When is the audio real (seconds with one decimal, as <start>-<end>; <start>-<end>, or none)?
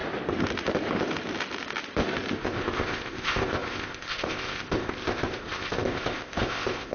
0.0-2.4